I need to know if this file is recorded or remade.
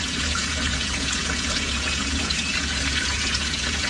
remade